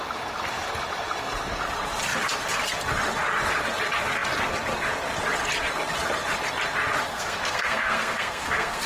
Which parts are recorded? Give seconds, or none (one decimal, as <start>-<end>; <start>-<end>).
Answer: 0.0-7.1